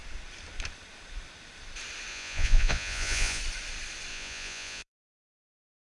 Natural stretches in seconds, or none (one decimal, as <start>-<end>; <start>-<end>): 0.0-2.1; 3.4-4.1; 5.4-5.9

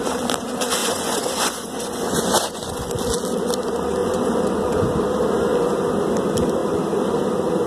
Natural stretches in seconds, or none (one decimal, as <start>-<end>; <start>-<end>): 0.0-0.8; 2.9-4.0; 4.9-7.7

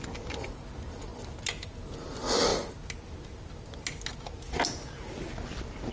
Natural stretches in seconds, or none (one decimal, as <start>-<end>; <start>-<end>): 0.0-5.9

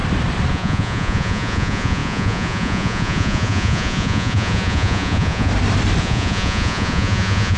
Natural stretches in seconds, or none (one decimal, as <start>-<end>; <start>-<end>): 0.0-0.5; 5.5-6.0

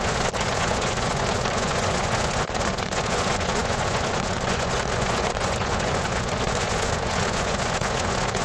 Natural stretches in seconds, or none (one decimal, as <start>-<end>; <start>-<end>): none

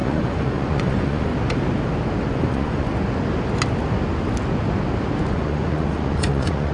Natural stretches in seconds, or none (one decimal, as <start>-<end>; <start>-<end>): 1.3-2.3; 2.9-5.2

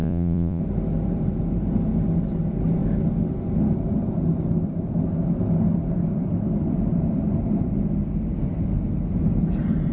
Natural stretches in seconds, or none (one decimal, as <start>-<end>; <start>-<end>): 0.6-9.9